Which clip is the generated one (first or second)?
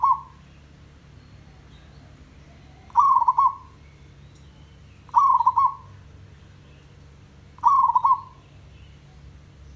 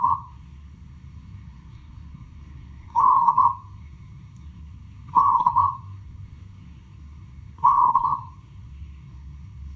second